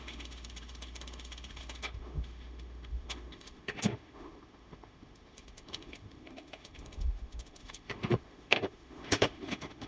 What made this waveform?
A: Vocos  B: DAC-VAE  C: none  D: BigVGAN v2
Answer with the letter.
B